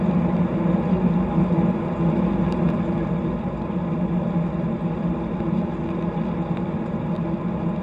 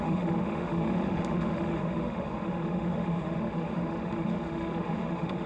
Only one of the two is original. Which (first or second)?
first